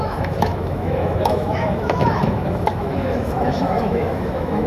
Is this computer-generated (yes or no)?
yes